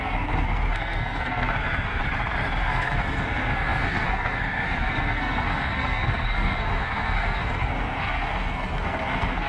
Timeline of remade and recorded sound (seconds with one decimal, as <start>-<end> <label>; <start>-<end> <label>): 0.0-2.0 remade; 2.0-2.6 recorded; 2.6-9.5 remade